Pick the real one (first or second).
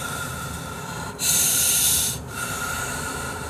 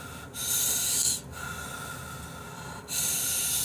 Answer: second